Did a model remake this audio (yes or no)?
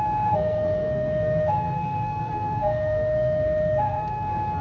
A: yes